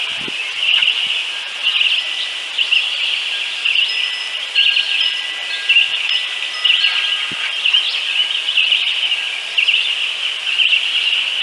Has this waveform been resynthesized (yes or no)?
no